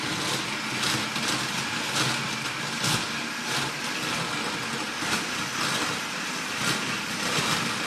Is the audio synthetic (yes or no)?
no